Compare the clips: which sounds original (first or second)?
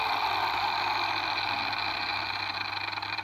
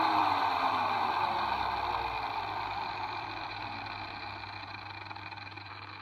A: first